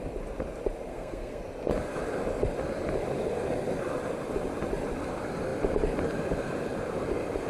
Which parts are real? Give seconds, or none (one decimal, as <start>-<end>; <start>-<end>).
0.0-0.9; 1.4-7.5